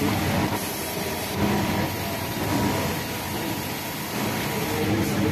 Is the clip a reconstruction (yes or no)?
no